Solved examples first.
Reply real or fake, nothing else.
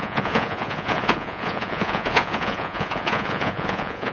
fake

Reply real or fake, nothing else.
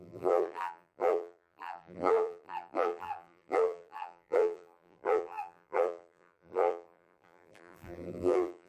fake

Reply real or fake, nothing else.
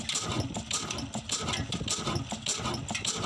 real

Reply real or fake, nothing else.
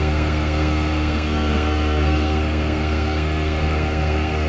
fake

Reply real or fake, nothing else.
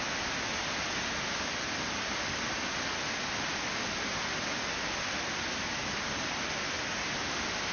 real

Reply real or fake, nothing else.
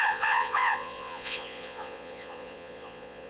fake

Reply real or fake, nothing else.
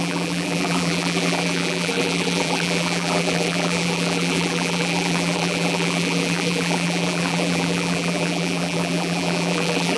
fake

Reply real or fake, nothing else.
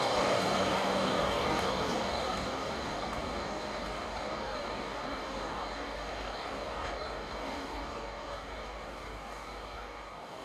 fake